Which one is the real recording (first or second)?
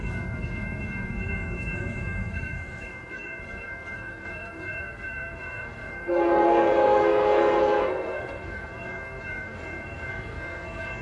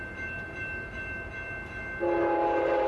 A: second